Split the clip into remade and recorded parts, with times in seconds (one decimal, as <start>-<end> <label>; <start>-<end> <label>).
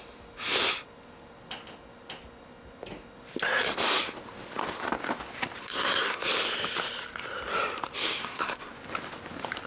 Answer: 0.0-5.6 recorded; 5.6-6.3 remade; 6.3-8.2 recorded; 8.2-8.8 remade; 8.8-9.7 recorded